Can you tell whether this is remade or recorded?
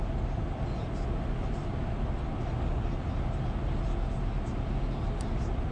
recorded